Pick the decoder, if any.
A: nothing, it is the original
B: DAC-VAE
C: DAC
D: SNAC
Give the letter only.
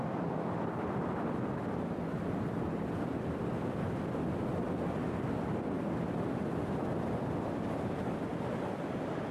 A